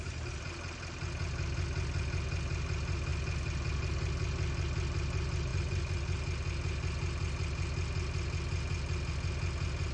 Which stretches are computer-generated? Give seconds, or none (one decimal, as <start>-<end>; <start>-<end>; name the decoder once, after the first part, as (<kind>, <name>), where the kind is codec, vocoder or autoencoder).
none